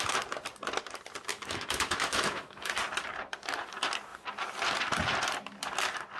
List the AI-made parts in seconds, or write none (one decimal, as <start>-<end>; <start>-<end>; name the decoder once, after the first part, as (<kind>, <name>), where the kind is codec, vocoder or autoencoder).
1.3-2.7 (autoencoder, DAC-VAE)